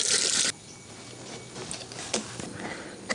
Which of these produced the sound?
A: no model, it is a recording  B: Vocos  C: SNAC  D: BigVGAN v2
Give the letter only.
A